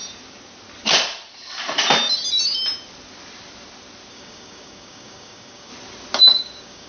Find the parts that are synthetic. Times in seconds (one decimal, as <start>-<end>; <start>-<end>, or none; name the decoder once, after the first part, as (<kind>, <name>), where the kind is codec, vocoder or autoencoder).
4.1-5.7 (codec, DAC); 6.2-6.9